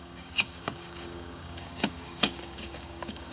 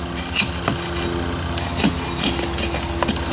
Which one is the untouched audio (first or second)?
second